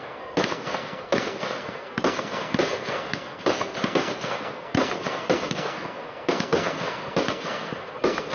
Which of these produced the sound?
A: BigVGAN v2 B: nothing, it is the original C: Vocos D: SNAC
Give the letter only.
D